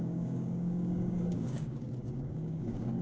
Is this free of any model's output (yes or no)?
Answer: no